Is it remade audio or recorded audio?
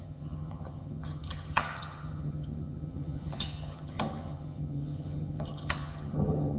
remade